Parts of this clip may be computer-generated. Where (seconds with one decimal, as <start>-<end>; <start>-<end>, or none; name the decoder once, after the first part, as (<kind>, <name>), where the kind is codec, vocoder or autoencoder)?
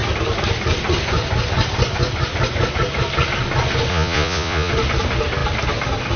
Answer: 3.9-4.7 (vocoder, Vocos)